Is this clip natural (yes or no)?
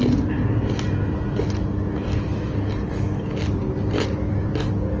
yes